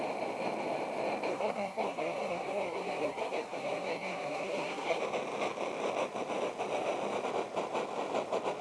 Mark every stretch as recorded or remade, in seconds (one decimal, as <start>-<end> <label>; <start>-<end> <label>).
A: 0.0-1.3 recorded; 1.3-5.0 remade; 5.0-8.6 recorded